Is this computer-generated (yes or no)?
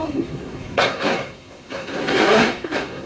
yes